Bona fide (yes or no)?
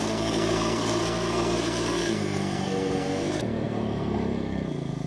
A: no